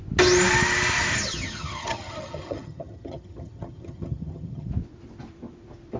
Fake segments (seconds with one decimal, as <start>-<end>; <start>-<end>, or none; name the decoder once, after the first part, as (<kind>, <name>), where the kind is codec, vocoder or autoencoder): 1.1-4.7 (vocoder, HiFi-GAN)